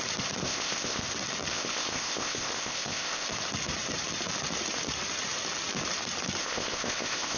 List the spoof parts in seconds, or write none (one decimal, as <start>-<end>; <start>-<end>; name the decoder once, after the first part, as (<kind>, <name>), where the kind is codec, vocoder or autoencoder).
0.4-1.0 (codec, ZipCodec); 1.5-3.3; 6.4-7.4